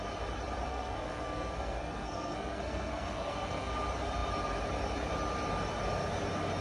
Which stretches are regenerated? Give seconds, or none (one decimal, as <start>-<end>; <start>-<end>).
0.7-3.7